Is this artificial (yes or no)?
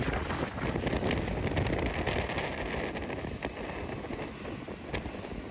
no